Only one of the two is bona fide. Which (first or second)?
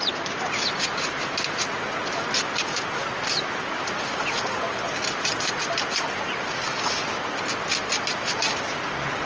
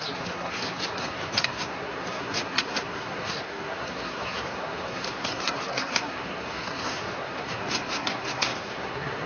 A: first